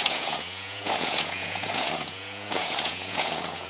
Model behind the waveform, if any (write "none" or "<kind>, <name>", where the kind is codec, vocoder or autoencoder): vocoder, Vocos